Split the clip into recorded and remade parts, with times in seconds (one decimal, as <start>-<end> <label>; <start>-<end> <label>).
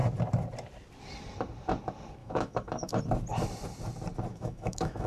0.0-2.2 recorded; 2.2-3.0 remade; 3.0-4.3 recorded; 4.3-5.1 remade